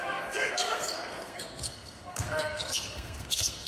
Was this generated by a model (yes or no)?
yes